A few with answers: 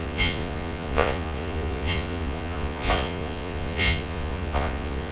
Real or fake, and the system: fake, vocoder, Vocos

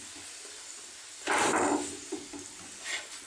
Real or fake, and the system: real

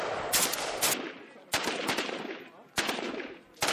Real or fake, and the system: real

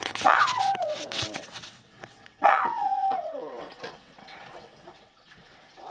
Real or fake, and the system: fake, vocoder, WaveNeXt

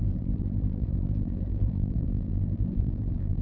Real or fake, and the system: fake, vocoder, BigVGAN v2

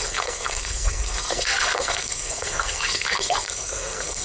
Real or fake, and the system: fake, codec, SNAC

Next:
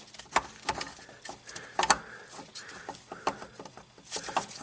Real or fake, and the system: real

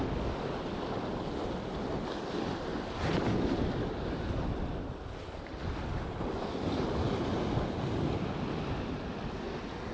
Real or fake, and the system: real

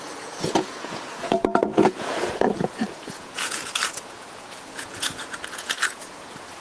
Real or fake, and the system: fake, vocoder, Vocos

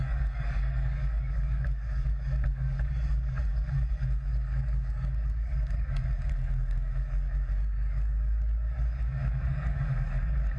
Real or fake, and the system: fake, codec, DAC